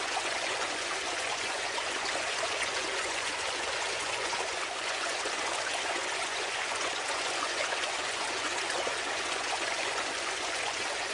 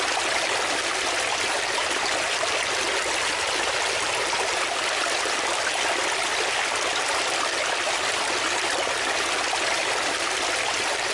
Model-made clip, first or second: first